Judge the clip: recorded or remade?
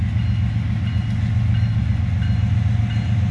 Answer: recorded